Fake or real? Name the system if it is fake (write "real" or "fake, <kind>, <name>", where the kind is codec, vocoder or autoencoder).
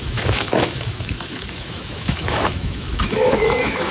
fake, autoencoder, DAC-VAE